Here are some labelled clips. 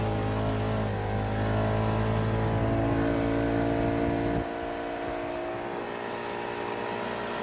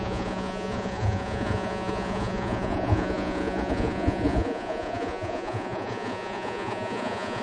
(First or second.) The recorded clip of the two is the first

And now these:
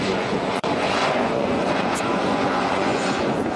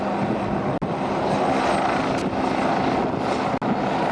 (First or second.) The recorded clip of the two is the second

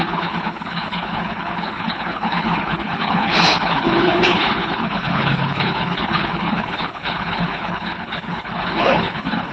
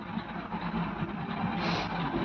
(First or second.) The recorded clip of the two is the second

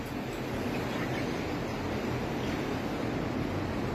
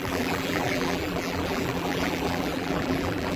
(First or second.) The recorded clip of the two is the first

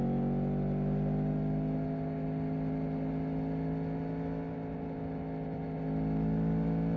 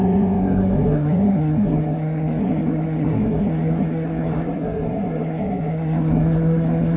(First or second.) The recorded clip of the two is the first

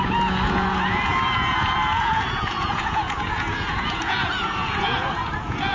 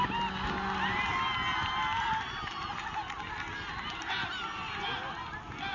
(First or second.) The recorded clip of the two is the second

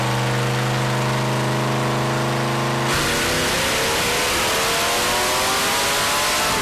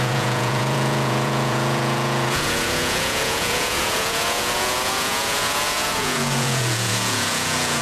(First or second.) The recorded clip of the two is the first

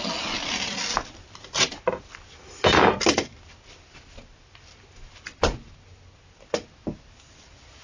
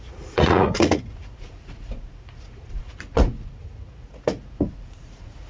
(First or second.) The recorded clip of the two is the first